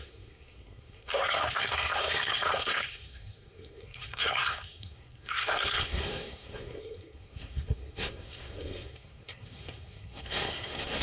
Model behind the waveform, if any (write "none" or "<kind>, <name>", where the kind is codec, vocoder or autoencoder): codec, SNAC